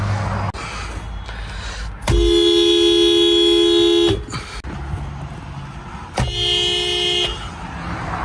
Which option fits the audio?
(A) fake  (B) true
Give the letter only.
B